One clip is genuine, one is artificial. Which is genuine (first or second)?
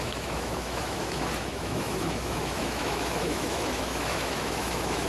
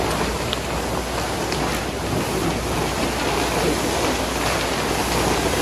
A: second